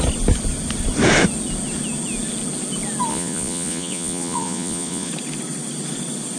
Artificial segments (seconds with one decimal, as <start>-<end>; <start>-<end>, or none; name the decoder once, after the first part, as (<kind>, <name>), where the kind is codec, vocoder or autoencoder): 3.1-5.1 (vocoder, Vocos)